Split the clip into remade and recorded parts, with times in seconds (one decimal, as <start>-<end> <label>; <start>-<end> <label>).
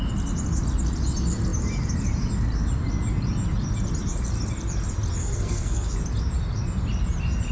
0.0-5.2 recorded; 5.2-5.9 remade; 5.9-7.5 recorded